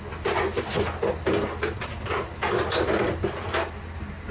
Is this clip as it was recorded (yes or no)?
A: yes